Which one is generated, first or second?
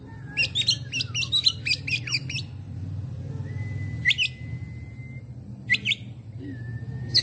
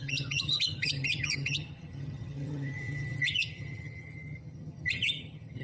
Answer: second